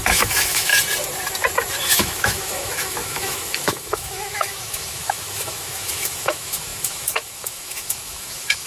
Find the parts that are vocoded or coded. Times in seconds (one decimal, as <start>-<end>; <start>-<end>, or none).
0.0-0.7; 1.9-8.7

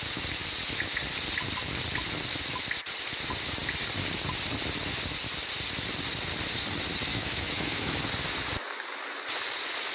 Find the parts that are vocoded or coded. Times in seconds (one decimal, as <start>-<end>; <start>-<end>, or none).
7.1-8.0

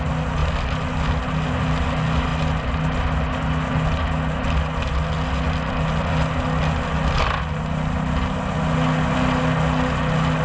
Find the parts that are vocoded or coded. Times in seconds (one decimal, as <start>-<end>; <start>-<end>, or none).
none

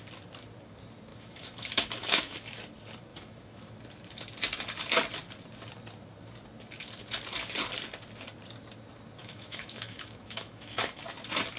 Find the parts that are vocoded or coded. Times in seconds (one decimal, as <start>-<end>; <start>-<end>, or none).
1.1-2.6; 3.1-3.7; 9.2-11.0

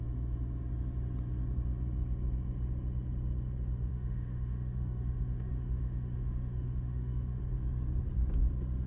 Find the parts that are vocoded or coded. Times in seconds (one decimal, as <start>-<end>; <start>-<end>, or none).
3.9-7.4

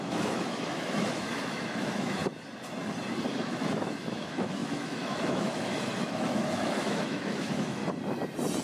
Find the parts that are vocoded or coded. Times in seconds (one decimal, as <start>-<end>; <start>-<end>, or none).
0.0-2.2; 3.3-7.8

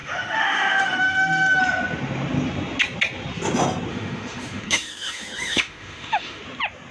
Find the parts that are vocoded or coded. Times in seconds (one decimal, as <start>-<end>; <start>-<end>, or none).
0.0-1.6; 3.9-6.4